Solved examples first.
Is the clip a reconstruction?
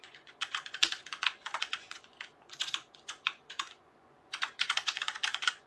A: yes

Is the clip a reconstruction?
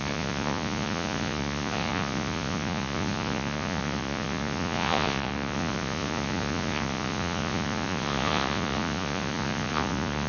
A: yes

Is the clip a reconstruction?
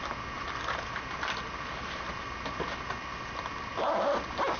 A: no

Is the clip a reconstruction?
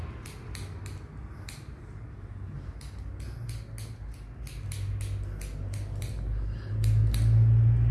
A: no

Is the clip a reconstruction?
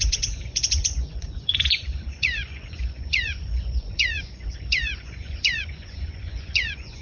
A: yes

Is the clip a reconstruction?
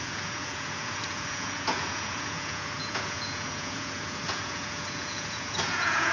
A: yes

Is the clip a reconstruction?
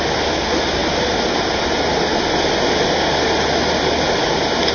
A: no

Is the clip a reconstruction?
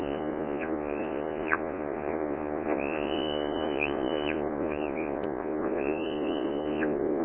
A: yes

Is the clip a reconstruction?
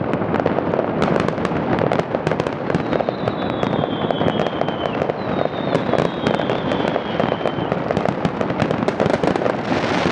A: no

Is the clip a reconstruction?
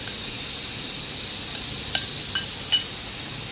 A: no